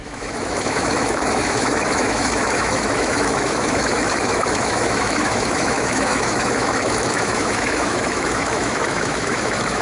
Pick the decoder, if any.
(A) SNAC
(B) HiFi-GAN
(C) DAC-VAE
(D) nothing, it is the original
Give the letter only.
C